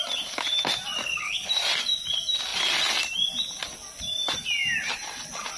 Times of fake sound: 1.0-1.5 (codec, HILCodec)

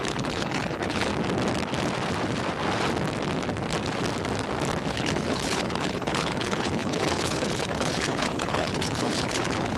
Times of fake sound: 0.0-1.1 (codec, HILCodec); 4.9-9.8

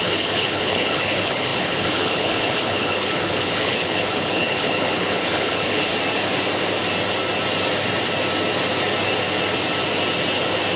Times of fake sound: 0.0-5.9 (codec, HILCodec)

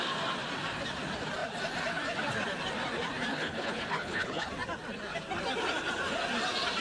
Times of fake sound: 3.3-4.5 (codec, HILCodec)

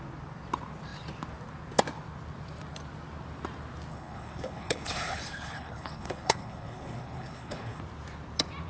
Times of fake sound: 3.9-7.8 (codec, HILCodec)